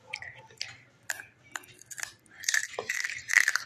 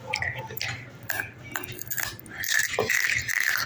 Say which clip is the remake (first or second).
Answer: first